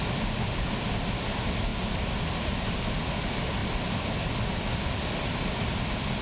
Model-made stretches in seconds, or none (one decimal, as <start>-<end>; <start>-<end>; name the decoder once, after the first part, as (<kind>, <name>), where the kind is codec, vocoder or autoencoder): none

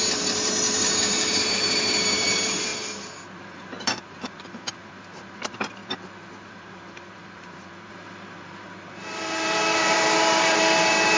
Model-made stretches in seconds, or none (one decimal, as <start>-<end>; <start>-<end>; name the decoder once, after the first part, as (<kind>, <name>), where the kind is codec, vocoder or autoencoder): 0.0-2.7 (vocoder, BigVGAN v2); 3.4-5.8; 6.3-11.2

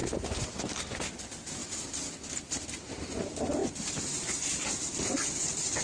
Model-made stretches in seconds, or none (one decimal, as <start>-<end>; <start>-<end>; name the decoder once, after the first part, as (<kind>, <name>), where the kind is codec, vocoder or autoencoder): 1.0-3.6 (vocoder, BigVGAN v2)

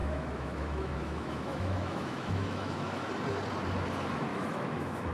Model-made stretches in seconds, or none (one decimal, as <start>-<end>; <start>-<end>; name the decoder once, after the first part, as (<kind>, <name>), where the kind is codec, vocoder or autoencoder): 0.0-3.1 (autoencoder, DAC-VAE); 4.3-5.1

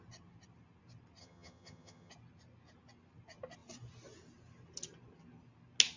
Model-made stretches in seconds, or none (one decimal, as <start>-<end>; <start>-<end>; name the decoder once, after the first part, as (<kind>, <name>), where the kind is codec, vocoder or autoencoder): 1.2-2.1 (vocoder, HiFi-GAN)

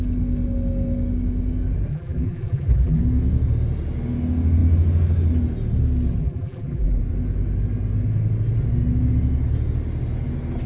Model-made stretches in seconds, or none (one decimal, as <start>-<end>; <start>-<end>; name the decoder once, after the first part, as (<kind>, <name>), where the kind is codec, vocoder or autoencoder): 1.9-3.0 (vocoder, BigVGAN v2); 6.2-7.0

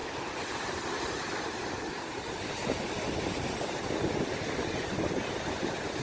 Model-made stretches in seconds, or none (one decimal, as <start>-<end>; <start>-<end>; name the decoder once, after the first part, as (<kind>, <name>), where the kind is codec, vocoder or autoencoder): none